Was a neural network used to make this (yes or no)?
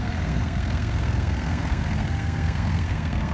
yes